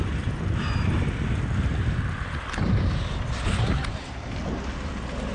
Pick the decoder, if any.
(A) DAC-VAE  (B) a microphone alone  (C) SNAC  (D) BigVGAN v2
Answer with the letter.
B